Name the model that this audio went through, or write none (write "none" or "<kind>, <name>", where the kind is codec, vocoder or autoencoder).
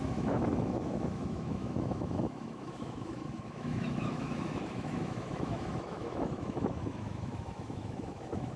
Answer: autoencoder, DAC-VAE